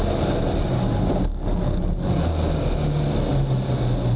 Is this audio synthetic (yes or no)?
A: no